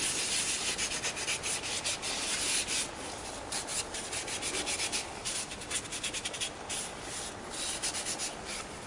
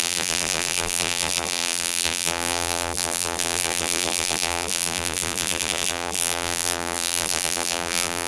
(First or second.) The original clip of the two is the first